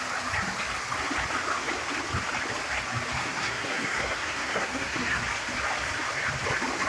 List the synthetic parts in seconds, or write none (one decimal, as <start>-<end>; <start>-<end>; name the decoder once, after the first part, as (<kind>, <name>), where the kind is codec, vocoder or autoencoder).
3.2-5.2 (codec, SNAC)